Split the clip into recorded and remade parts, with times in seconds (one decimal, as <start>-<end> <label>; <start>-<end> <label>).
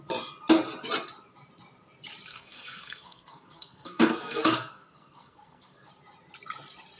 0.0-2.3 recorded; 2.3-5.9 remade; 5.9-7.0 recorded